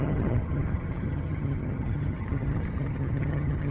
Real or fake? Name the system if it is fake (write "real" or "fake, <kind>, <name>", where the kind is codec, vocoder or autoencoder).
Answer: fake, vocoder, HiFi-GAN